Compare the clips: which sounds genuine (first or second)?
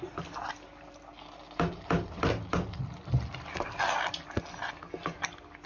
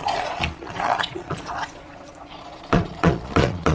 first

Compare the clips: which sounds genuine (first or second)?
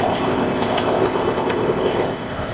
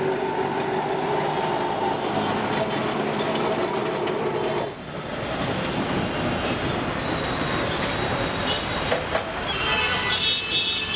second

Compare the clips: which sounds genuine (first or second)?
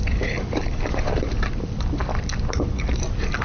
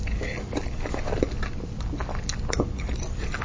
second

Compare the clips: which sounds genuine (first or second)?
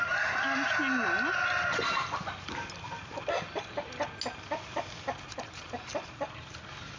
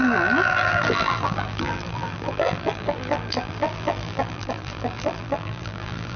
first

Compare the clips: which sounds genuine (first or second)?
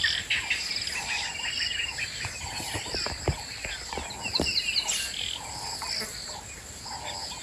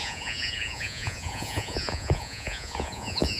first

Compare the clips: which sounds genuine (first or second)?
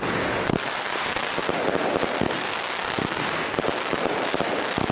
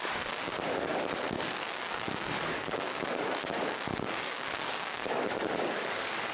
first